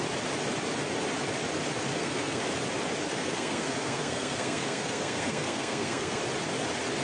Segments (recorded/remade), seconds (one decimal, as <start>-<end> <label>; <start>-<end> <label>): 0.0-1.9 recorded; 1.9-2.4 remade; 2.4-3.1 recorded; 3.1-6.2 remade; 6.2-7.0 recorded